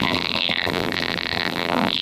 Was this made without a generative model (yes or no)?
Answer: no